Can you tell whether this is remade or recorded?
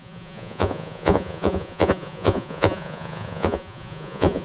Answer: remade